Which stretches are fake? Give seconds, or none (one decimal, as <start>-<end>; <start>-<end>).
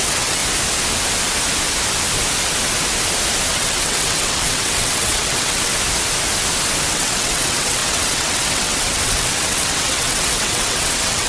0.0-0.4; 3.5-5.7; 6.9-11.3